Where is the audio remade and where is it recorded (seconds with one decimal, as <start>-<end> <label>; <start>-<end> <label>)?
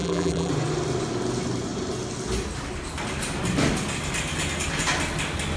0.0-0.5 remade; 0.5-5.6 recorded